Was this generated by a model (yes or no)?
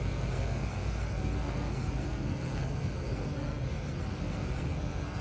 yes